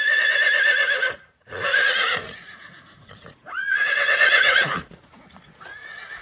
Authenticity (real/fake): fake